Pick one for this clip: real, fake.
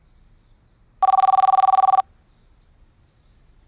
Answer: real